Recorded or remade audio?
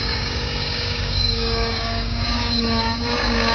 remade